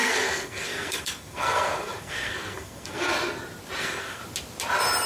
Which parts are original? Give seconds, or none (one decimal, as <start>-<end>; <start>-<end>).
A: 3.1-3.8; 4.2-5.1